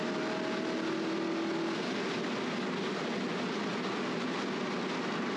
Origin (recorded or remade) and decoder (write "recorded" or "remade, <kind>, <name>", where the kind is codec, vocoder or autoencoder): recorded